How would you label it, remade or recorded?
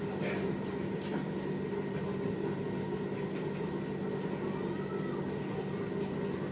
recorded